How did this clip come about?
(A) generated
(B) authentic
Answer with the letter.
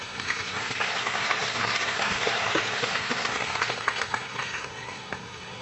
A